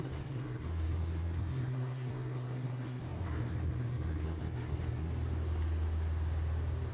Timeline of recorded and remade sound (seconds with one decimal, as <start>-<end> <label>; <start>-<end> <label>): 0.0-5.1 remade; 5.1-6.9 recorded